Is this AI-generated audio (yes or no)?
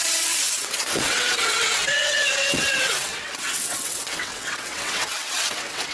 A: yes